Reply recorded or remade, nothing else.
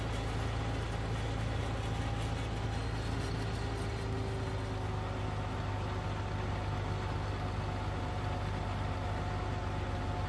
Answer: recorded